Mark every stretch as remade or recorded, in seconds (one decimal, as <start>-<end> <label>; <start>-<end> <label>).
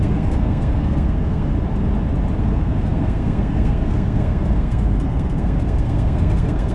0.0-1.5 remade; 1.5-2.4 recorded; 2.4-6.7 remade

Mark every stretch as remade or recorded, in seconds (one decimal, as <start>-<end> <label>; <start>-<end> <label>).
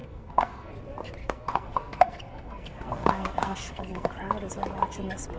0.0-0.7 remade; 0.7-1.2 recorded; 1.2-4.1 remade; 4.1-5.4 recorded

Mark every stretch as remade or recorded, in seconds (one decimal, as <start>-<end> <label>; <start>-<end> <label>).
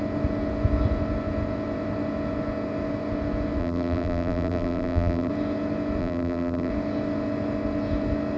0.0-3.6 recorded; 3.6-5.3 remade; 5.3-6.0 recorded; 6.0-6.7 remade; 6.7-8.4 recorded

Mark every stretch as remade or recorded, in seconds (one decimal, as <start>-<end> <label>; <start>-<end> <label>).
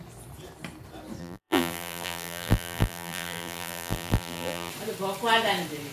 0.0-1.2 recorded; 1.2-4.7 remade; 4.7-5.9 recorded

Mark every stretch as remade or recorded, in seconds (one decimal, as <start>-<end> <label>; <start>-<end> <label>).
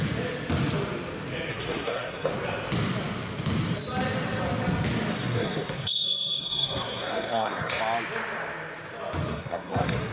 0.0-1.5 recorded; 1.5-2.3 remade; 2.3-5.1 recorded; 5.1-7.8 remade; 7.8-9.3 recorded; 9.3-10.1 remade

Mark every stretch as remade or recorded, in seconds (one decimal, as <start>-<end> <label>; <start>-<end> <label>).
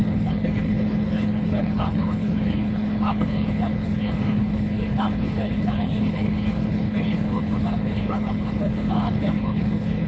0.0-10.1 remade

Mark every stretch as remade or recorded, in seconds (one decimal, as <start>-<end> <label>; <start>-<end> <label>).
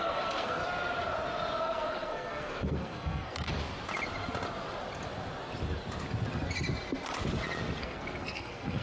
0.0-0.6 remade; 0.6-1.6 recorded; 1.6-3.6 remade; 3.6-7.8 recorded; 7.8-8.8 remade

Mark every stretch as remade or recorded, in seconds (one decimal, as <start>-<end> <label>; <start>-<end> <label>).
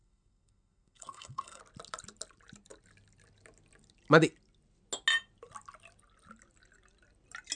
0.0-1.6 remade; 1.6-7.6 recorded